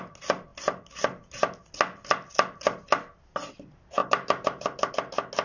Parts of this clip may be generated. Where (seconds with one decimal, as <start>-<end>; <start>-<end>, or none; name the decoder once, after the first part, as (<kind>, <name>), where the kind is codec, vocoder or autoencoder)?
4.0-4.9 (vocoder, BigVGAN v2)